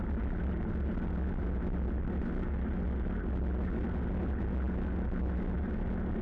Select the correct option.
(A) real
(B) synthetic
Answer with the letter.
A